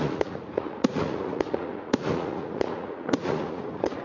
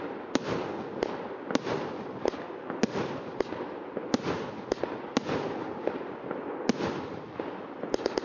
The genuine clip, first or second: second